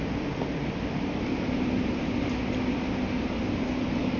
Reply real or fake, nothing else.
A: real